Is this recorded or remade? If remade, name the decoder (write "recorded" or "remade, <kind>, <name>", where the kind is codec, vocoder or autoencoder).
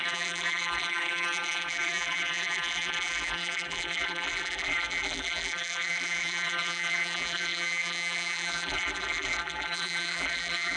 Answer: remade, vocoder, BigVGAN v2